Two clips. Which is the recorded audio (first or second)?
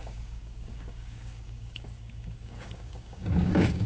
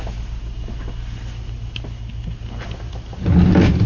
second